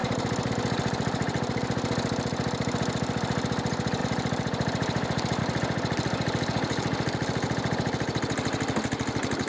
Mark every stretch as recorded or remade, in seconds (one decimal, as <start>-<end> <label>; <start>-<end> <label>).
0.0-0.5 remade; 0.5-9.5 recorded